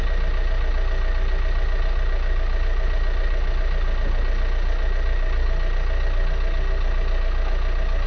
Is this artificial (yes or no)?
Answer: no